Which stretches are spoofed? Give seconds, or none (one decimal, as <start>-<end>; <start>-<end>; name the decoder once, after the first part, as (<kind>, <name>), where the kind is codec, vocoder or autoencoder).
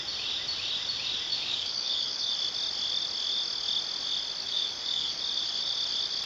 1.3-2.3 (codec, DAC); 4.4-5.2